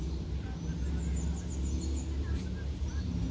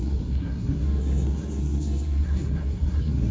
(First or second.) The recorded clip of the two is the first